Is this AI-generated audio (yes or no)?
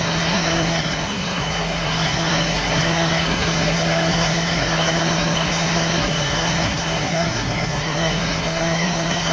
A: yes